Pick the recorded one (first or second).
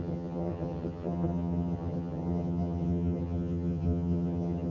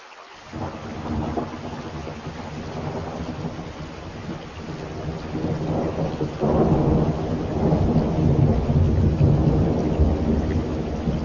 second